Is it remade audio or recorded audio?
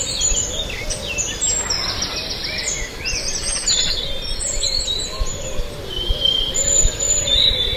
remade